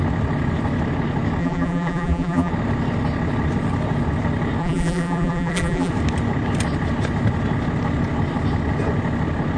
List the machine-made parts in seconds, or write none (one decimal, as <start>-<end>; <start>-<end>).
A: 1.4-2.5; 4.6-5.9